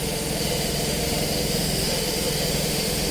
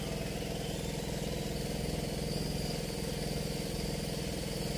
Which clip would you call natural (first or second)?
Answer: second